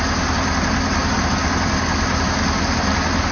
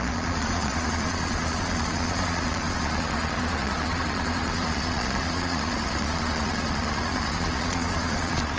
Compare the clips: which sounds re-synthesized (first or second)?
second